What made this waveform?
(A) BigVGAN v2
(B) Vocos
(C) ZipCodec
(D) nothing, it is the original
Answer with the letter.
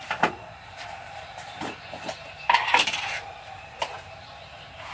A